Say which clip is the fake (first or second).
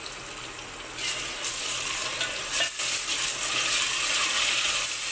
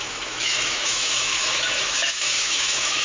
second